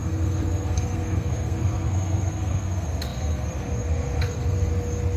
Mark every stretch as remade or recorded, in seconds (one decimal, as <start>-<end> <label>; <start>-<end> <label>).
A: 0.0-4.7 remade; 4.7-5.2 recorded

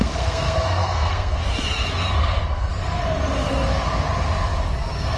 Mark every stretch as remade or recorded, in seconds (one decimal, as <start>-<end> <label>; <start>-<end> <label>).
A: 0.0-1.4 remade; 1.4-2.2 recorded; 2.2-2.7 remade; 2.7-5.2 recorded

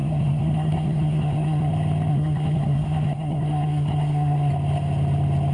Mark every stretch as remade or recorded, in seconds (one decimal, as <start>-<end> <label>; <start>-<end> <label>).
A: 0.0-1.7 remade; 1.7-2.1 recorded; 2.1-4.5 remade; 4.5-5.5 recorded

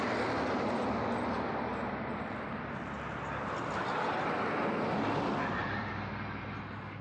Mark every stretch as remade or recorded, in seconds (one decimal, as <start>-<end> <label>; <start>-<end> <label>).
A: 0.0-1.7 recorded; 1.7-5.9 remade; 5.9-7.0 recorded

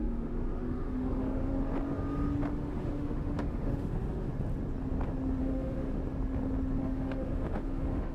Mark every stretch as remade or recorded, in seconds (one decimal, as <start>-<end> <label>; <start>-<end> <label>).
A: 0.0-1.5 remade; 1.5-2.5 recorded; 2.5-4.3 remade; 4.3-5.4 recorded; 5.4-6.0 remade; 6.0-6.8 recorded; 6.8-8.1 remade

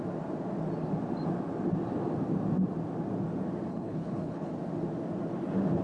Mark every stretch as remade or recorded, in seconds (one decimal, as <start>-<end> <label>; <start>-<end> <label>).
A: 0.0-3.7 recorded; 3.7-4.5 remade; 4.5-5.8 recorded

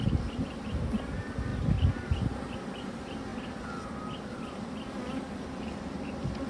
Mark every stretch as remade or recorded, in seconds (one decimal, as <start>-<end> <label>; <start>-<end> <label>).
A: 0.0-1.5 recorded; 1.5-2.5 remade; 2.5-6.5 recorded